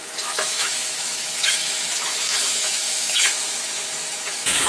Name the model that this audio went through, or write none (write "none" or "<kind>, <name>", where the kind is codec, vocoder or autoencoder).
autoencoder, DAC-VAE